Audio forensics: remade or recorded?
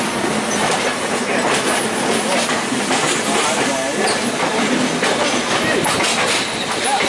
recorded